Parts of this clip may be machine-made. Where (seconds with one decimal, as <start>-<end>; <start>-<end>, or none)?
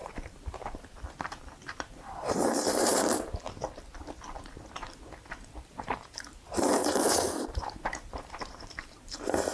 0.0-2.9; 5.7-6.8; 7.4-9.5